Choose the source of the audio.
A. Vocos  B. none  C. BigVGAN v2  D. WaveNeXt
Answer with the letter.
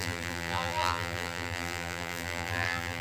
C